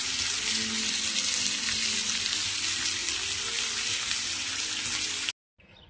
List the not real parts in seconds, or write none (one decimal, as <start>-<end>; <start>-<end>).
none